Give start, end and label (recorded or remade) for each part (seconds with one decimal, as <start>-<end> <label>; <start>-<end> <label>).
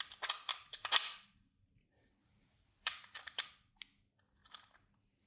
0.0-0.5 recorded; 0.5-3.7 remade; 3.7-4.4 recorded; 4.4-5.3 remade